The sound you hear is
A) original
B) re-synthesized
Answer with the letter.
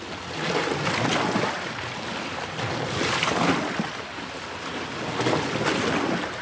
A